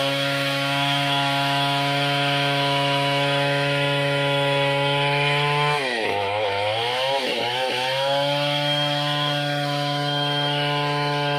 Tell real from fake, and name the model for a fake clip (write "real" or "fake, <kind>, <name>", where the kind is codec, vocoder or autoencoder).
fake, autoencoder, DAC-VAE